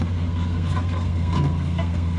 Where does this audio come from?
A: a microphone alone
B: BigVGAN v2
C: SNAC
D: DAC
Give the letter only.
C